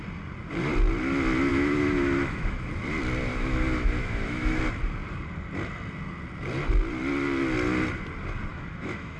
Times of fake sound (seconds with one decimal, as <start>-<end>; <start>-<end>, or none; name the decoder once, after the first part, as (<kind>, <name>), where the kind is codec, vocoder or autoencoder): 1.5-2.7 (autoencoder, DAC-VAE); 3.3-4.6; 8.5-9.2